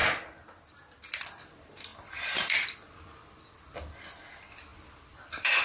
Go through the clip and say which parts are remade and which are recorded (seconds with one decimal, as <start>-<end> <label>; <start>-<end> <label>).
0.0-1.9 recorded; 1.9-3.4 remade; 3.4-4.7 recorded; 4.7-5.6 remade